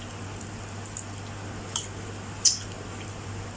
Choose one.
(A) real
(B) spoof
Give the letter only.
A